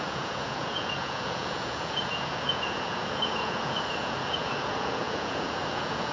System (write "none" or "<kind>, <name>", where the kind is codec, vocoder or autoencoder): vocoder, Vocos